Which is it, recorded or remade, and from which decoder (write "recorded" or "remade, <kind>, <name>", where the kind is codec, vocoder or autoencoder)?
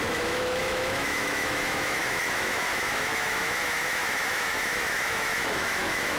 remade, autoencoder, DAC-VAE